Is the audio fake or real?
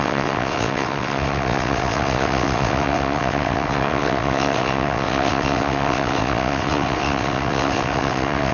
fake